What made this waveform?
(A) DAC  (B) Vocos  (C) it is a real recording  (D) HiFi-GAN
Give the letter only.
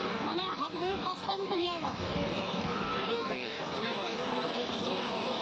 A